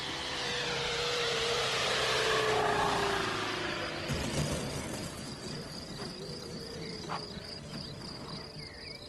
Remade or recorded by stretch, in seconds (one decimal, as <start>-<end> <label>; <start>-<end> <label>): 0.0-1.8 remade; 1.8-5.0 recorded; 5.0-7.9 remade; 7.9-9.1 recorded